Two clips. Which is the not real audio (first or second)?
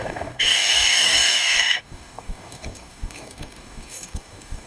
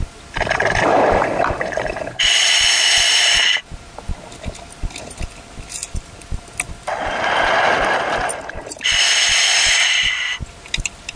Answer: first